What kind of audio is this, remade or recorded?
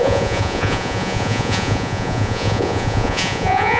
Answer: remade